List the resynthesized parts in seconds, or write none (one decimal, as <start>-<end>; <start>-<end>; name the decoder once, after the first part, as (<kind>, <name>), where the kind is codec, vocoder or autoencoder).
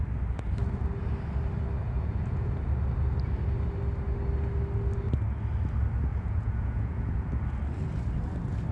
1.8-2.5 (vocoder, Vocos); 6.1-7.3